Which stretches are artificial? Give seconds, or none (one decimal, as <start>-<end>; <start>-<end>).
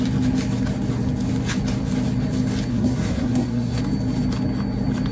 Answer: 2.7-3.8